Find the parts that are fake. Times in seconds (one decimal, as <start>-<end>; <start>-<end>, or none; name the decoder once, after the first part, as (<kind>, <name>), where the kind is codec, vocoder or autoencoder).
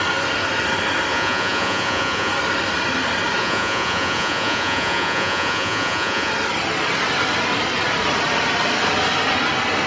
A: 1.1-2.3 (vocoder, Vocos); 3.4-6.3